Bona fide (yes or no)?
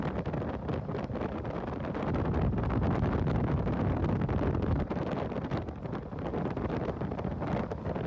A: yes